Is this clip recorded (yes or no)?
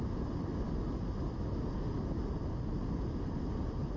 yes